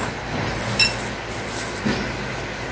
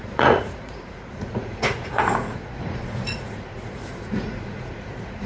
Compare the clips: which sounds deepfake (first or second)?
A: second